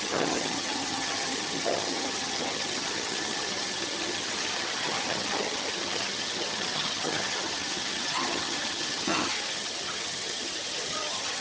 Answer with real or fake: fake